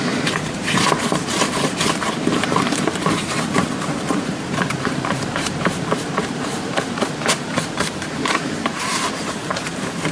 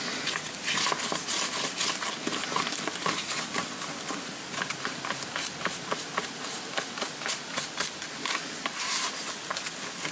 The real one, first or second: second